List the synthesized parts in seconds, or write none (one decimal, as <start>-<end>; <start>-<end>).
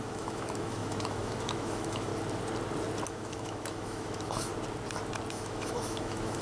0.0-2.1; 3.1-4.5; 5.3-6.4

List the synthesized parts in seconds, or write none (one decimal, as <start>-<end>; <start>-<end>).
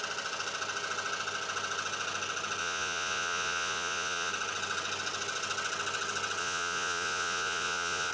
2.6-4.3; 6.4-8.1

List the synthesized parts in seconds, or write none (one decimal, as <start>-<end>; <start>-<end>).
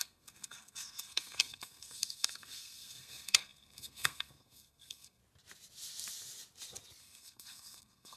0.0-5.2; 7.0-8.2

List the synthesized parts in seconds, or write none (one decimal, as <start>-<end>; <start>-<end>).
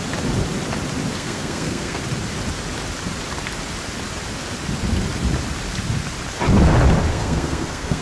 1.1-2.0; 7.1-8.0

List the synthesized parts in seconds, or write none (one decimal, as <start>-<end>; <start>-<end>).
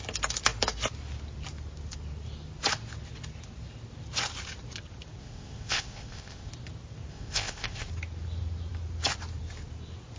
5.2-6.5; 7.1-7.9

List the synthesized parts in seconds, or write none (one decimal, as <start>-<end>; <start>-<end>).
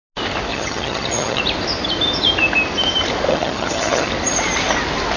0.5-1.4; 3.3-4.1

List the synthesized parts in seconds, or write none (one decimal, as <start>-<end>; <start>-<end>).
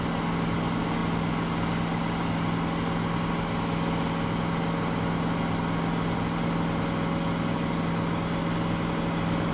none